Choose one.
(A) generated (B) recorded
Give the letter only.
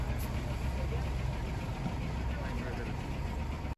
B